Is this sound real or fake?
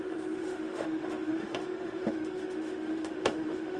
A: fake